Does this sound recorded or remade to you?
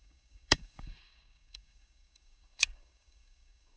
remade